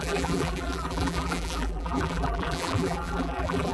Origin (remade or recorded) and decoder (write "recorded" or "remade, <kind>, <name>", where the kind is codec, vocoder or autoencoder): remade, vocoder, BigVGAN v2